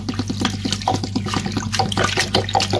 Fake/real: real